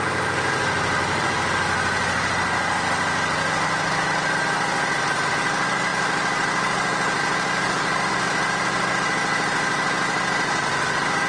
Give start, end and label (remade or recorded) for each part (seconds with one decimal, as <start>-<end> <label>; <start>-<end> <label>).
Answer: 0.0-11.3 recorded